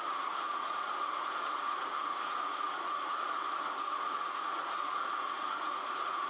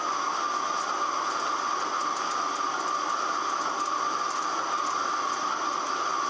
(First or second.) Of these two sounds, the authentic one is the second